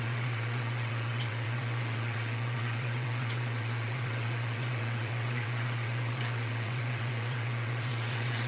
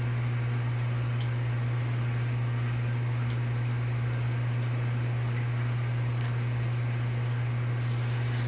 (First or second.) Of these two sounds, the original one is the second